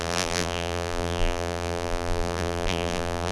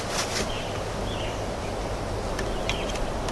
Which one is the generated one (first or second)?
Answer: first